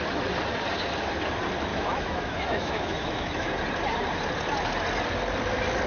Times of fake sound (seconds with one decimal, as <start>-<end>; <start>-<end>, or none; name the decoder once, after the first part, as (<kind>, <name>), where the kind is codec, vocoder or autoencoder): 1.7-3.5 (autoencoder, DAC-VAE)